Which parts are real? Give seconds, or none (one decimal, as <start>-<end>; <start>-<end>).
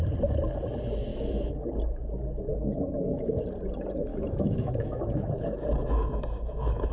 0.0-1.1; 1.6-2.5; 3.4-4.1